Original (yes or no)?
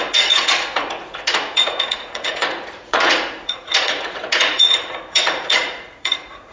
no